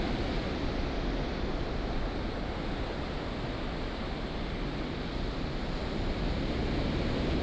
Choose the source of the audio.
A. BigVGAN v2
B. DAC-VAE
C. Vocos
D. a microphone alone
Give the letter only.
D